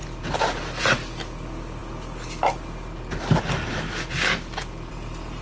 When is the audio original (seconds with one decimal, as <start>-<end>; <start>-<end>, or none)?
0.0-5.4